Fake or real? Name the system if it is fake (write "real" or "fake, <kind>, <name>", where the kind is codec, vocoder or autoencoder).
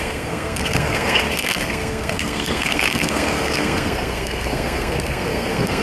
fake, codec, SNAC